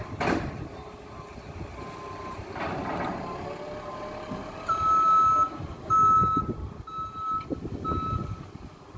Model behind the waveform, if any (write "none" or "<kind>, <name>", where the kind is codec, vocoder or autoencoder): none